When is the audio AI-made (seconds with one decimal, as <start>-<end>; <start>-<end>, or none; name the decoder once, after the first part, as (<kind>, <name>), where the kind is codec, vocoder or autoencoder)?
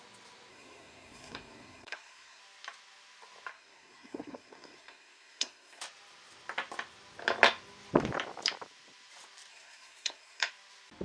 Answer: 0.5-2.4 (codec, SNAC); 3.5-5.8; 9.5-10.5